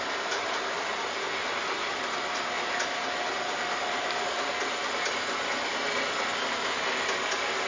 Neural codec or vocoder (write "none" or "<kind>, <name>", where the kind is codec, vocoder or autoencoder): none